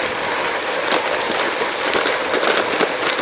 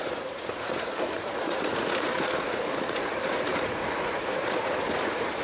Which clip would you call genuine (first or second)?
first